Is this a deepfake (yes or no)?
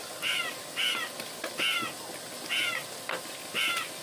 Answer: no